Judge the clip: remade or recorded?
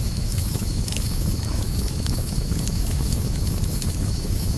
remade